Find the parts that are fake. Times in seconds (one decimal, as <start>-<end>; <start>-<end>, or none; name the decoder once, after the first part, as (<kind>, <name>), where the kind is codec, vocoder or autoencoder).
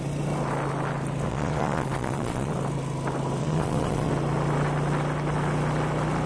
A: 1.3-2.5 (vocoder, Vocos); 3.4-4.1